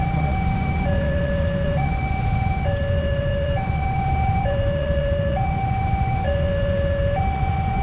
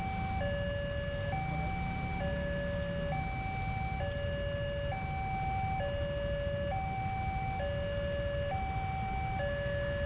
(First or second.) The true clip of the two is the second